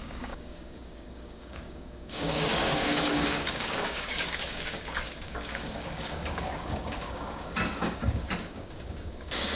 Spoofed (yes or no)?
yes